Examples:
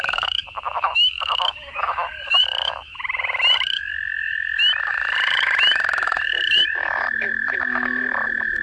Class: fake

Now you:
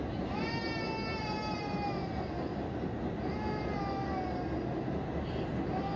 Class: real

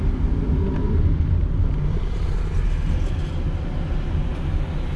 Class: real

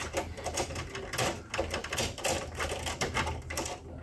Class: real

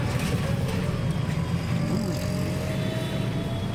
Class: real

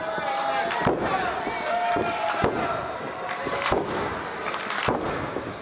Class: real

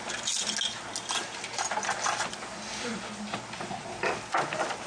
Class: real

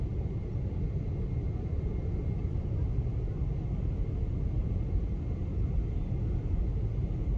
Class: real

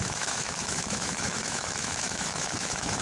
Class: fake